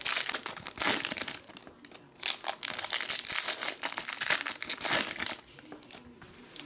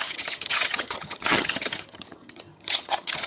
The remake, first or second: second